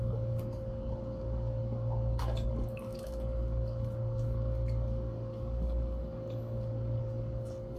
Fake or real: fake